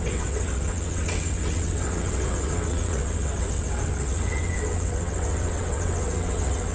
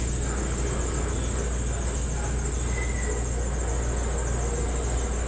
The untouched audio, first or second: second